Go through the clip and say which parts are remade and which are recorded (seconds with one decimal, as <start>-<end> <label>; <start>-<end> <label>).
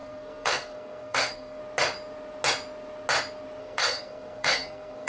0.0-1.6 remade; 1.6-3.6 recorded; 3.6-5.1 remade